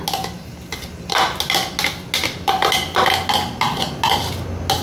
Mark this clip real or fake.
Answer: real